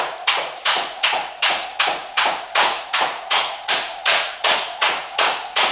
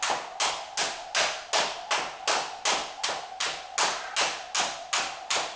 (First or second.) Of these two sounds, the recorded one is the second